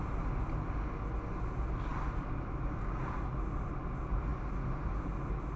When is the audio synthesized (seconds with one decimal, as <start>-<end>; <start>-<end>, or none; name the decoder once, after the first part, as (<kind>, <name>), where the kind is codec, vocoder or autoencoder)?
none